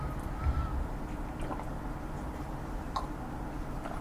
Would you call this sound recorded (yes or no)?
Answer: no